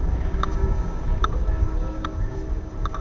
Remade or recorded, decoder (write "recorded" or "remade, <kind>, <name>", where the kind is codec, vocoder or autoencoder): remade, codec, DAC